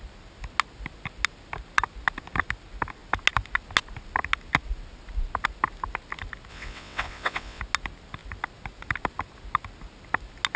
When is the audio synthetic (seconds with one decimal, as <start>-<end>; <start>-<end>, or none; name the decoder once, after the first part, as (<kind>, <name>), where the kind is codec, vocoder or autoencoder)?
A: 6.5-7.6 (vocoder, WaveNeXt)